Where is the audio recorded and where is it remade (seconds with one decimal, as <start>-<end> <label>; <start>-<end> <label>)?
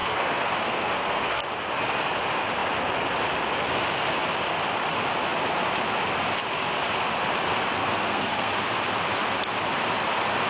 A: 0.0-1.4 remade; 1.4-7.8 recorded; 7.8-8.5 remade; 8.5-10.5 recorded